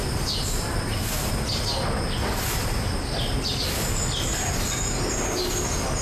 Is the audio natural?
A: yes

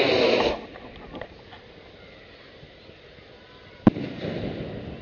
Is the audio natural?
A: yes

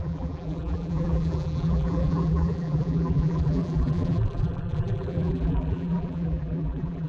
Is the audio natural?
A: no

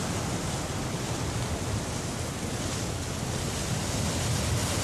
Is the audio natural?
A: yes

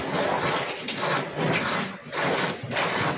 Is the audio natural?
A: yes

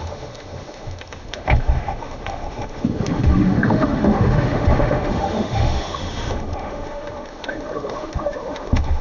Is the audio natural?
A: no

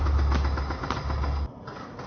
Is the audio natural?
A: yes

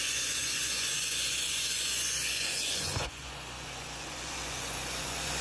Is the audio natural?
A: no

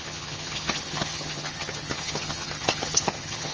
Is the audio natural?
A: no